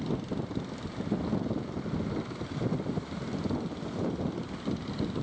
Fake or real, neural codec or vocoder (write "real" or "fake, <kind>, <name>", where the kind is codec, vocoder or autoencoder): real